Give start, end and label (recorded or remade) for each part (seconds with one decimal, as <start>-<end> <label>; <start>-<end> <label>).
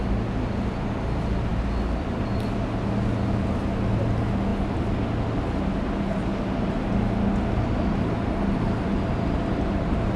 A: 0.0-10.2 recorded